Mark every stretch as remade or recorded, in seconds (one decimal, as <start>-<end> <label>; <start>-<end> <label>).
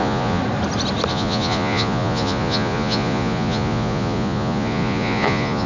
0.0-0.4 remade; 0.4-1.1 recorded; 1.1-5.7 remade